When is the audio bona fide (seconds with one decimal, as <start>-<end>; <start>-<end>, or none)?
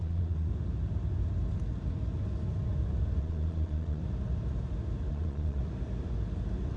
0.5-3.2; 4.0-5.1; 5.6-6.8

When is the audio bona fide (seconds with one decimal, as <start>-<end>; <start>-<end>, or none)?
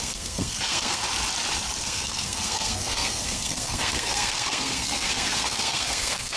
1.0-1.8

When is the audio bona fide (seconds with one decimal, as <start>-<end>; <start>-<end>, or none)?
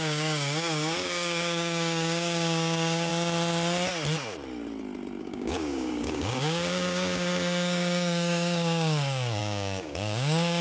3.1-5.2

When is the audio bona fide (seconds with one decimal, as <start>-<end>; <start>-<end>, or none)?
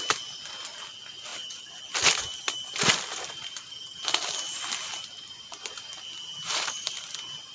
0.0-7.5